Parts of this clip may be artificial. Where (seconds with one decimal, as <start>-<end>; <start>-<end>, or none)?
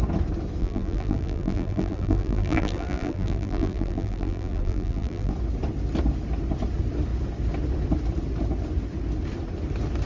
0.6-5.3